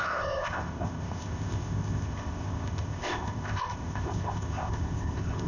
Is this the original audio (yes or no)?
no